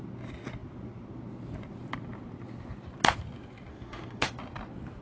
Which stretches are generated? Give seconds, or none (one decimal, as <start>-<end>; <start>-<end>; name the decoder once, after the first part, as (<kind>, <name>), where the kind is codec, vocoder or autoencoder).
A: 3.7-4.3 (autoencoder, DAC-VAE)